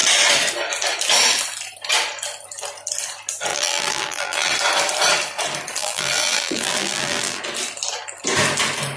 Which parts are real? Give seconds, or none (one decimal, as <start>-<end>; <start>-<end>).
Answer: 0.0-3.5; 4.5-5.8; 7.4-9.0